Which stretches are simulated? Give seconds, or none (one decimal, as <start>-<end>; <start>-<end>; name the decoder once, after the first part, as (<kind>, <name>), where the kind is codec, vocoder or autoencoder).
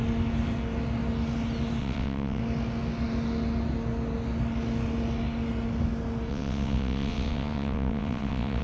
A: 1.8-2.4 (vocoder, WaveNeXt); 6.3-8.6